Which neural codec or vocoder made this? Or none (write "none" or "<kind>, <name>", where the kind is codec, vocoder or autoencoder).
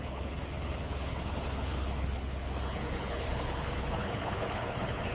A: codec, HILCodec